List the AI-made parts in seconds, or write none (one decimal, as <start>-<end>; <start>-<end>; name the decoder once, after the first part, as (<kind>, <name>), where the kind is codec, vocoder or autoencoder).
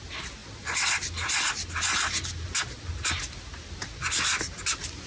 none